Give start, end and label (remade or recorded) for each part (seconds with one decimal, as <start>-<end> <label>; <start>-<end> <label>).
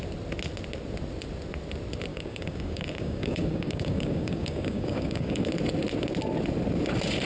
0.0-2.1 recorded; 2.1-5.5 remade; 5.5-7.2 recorded